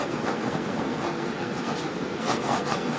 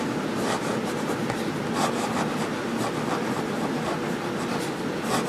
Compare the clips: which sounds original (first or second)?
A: second